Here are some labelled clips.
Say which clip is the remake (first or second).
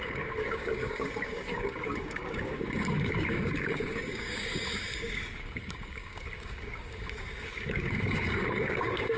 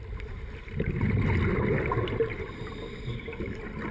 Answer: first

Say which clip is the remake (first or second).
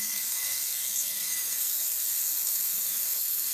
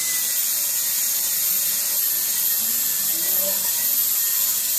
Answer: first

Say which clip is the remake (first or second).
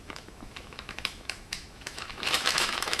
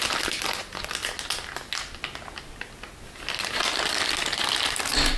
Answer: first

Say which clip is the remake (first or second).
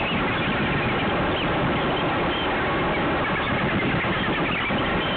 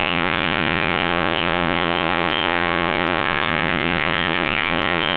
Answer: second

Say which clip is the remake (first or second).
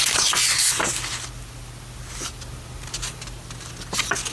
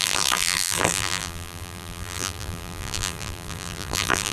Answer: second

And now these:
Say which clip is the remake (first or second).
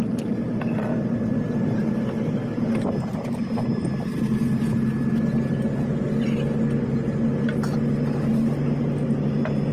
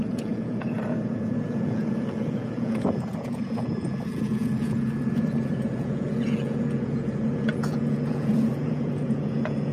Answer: second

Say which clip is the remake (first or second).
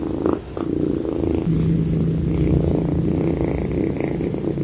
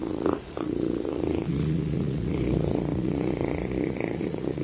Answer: second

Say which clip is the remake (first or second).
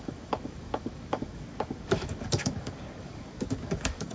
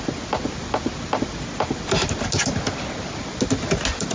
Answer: first